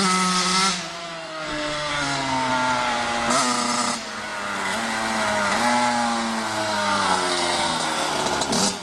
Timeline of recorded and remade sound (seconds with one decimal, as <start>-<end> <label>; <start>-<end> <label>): 0.0-1.0 recorded; 1.0-2.5 remade; 2.5-6.6 recorded; 6.6-8.1 remade; 8.1-8.8 recorded